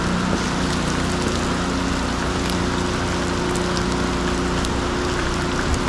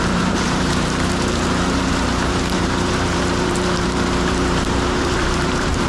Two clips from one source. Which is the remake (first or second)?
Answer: second